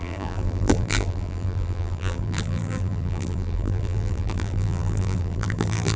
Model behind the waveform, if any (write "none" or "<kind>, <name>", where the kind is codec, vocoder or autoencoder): vocoder, BigVGAN v2